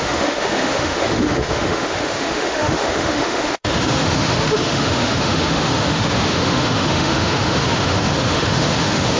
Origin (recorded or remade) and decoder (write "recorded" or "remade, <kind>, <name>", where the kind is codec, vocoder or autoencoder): remade, autoencoder, DAC-VAE